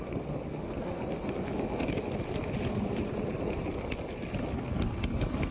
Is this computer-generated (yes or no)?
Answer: no